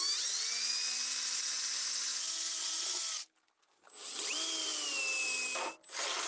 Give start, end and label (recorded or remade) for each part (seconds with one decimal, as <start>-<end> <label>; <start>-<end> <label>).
0.0-6.3 recorded